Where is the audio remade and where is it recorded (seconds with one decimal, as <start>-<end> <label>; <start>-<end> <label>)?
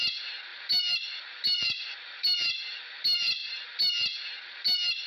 0.0-5.1 recorded